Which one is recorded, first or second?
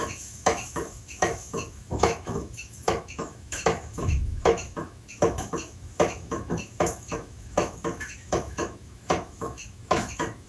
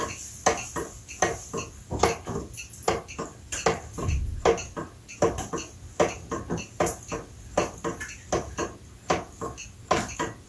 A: second